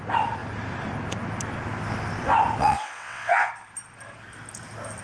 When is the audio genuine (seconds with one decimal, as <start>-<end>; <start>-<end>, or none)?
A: 0.0-2.6; 3.5-5.0